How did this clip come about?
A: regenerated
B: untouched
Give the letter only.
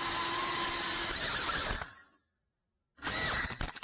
B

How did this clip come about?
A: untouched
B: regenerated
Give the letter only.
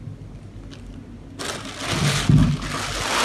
A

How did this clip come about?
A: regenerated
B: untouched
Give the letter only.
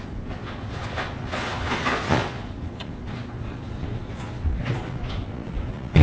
A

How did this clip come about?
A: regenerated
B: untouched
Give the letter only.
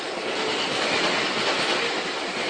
B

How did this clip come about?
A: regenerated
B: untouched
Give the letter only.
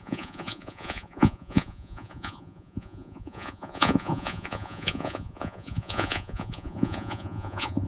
A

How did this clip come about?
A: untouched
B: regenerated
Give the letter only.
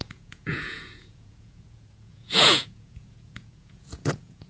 B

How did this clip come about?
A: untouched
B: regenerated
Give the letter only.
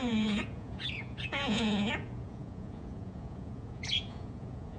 B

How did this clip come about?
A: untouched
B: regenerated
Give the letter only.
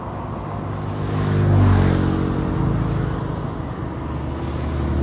A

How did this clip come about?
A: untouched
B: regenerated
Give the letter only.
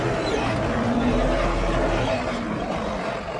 A